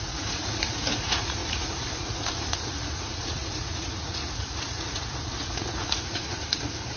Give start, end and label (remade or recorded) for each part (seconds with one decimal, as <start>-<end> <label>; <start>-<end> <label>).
0.0-7.0 remade